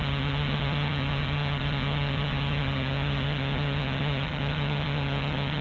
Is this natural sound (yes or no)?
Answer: no